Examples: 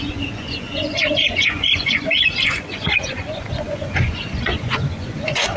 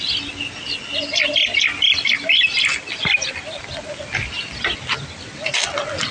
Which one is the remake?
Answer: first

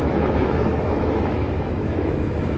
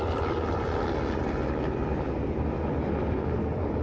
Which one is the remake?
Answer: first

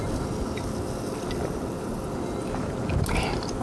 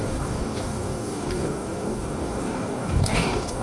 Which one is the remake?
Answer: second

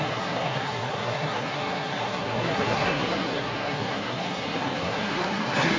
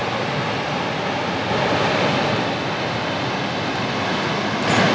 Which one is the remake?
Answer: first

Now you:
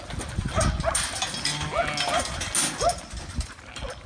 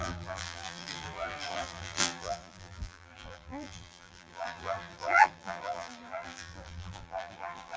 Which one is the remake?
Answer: second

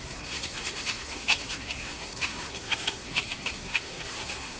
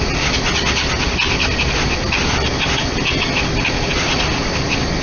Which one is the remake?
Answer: first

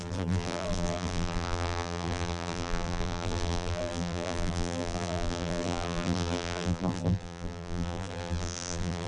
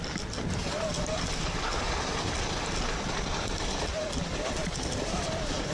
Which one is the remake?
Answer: first